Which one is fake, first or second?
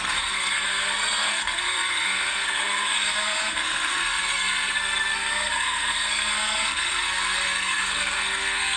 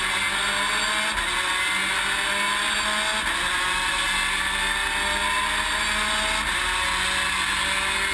first